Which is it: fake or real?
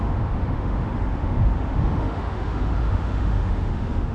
fake